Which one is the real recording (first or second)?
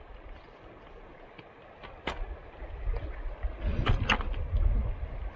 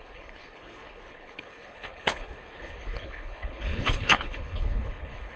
first